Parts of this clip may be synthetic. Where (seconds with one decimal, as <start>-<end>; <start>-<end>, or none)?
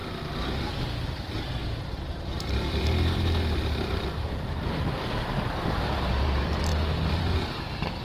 0.0-6.7; 7.2-8.0